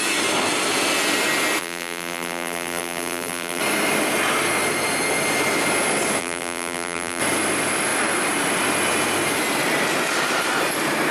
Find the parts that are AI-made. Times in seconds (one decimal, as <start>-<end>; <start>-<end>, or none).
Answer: 1.6-3.6; 6.2-7.2